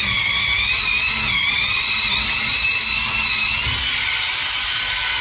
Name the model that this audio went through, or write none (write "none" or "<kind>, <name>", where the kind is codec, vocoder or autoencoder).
none